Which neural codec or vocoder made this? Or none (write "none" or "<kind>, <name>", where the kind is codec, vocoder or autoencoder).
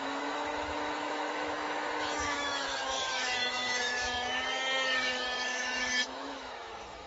autoencoder, DAC-VAE